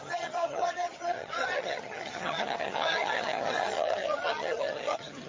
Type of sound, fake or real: fake